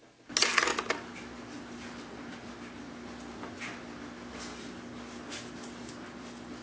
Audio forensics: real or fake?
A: real